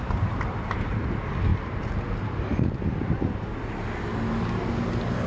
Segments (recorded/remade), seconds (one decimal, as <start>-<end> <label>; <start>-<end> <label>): 0.0-1.0 remade; 1.0-5.3 recorded